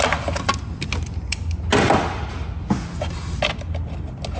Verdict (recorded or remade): recorded